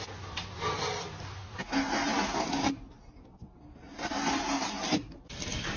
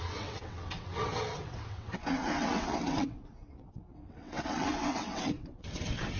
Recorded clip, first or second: first